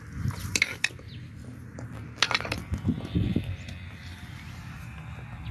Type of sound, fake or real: real